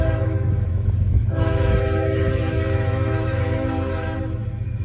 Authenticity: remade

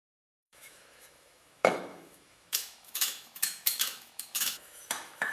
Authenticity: remade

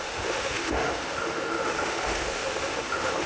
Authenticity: remade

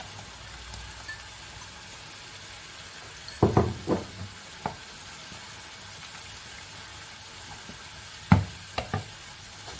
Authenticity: recorded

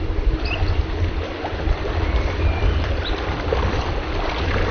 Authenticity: recorded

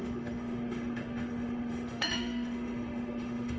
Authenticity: remade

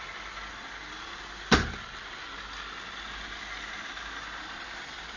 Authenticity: recorded